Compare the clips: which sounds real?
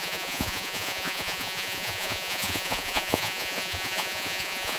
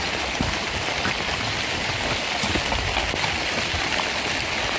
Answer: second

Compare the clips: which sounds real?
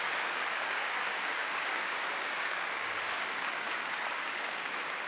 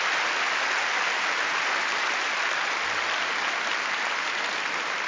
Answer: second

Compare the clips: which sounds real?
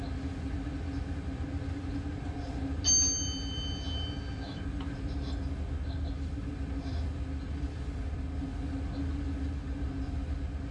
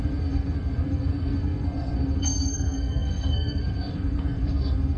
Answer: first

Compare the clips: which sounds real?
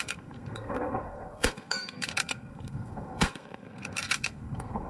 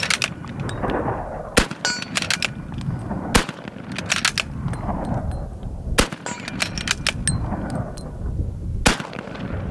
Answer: second